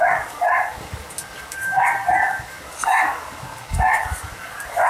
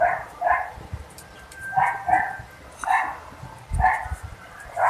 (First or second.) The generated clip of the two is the first